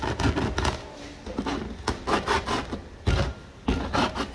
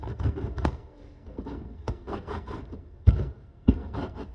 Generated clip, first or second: second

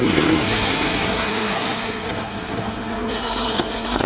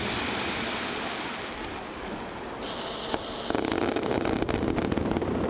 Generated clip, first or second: first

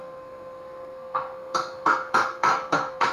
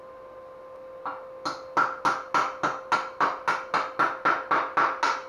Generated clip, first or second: first